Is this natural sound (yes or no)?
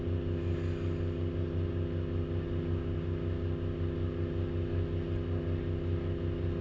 yes